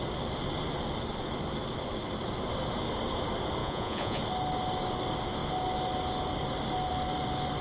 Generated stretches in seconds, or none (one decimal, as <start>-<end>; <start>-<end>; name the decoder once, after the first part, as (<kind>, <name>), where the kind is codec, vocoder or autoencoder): 3.6-4.2 (vocoder, Vocos)